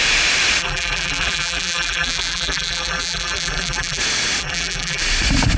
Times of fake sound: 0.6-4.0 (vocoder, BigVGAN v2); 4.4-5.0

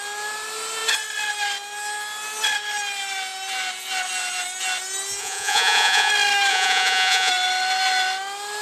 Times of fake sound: 5.2-6.1 (vocoder, Vocos); 6.5-7.3

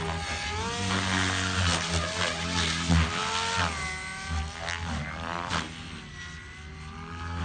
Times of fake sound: none

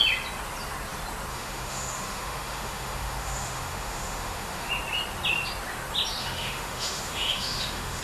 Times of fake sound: 1.3-4.7 (autoencoder, DAC-VAE); 6.2-8.0

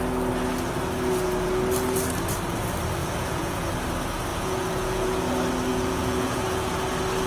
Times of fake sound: 3.0-3.7 (vocoder, Vocos); 4.3-5.2; 5.7-6.7

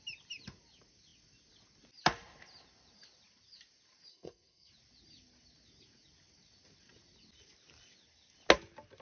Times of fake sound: 4.1-4.7 (codec, SNAC)